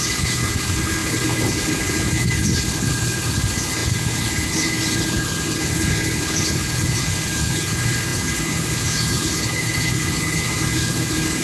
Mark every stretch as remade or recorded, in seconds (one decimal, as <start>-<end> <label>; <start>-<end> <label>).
0.0-11.4 remade